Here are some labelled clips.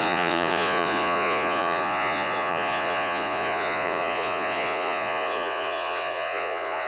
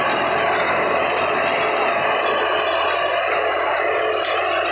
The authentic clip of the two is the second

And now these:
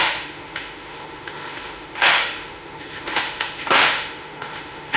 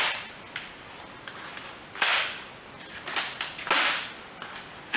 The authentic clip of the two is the second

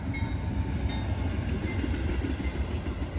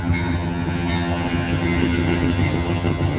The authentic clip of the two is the first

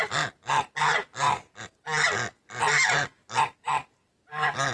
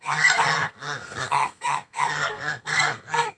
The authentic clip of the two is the first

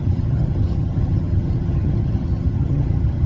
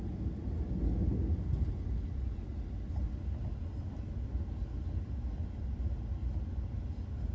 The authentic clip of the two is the second